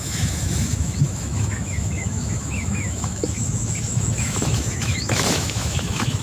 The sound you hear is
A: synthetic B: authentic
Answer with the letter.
A